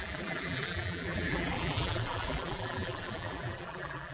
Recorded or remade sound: remade